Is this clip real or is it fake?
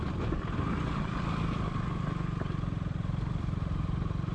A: fake